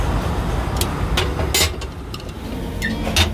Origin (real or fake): real